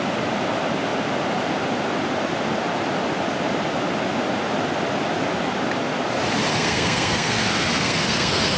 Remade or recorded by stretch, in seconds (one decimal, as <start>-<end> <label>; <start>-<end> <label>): 0.0-6.5 recorded; 6.5-8.6 remade